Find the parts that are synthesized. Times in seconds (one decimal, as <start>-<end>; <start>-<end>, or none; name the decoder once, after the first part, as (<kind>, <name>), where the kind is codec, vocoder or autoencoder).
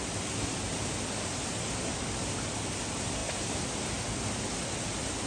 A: none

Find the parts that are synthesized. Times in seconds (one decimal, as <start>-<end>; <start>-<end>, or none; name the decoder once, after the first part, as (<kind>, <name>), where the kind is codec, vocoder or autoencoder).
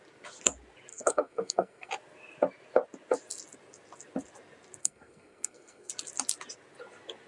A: 0.9-1.9 (codec, SNAC); 4.8-5.9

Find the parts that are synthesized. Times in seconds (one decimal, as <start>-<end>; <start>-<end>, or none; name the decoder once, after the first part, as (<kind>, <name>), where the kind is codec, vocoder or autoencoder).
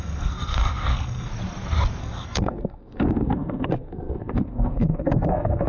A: 0.0-1.3 (codec, SNAC); 2.0-5.7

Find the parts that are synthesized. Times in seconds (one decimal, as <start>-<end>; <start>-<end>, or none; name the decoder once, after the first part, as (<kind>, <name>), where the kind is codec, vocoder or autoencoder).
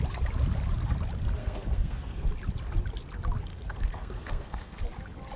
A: 1.4-2.3 (codec, SNAC); 3.5-4.8